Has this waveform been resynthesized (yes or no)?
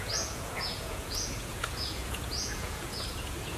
yes